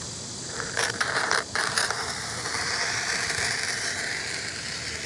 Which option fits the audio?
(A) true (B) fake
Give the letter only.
B